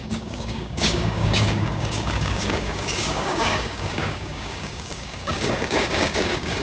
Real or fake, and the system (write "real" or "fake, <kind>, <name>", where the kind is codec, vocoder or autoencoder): fake, codec, DAC